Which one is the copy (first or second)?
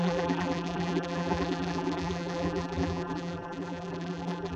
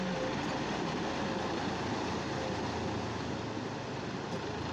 first